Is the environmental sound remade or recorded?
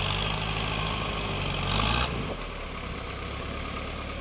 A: recorded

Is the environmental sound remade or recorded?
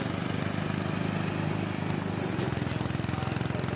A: recorded